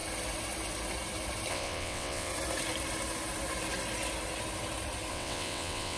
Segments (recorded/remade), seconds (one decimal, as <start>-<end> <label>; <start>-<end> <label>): 0.0-1.5 recorded; 1.5-2.3 remade; 2.3-5.1 recorded; 5.1-6.0 remade